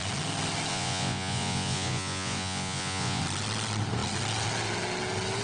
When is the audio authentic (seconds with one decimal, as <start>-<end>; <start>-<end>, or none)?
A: 0.0-0.7; 3.2-5.4